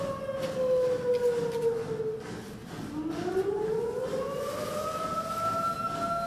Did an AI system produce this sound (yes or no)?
no